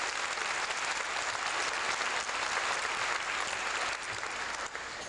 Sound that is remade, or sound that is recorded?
recorded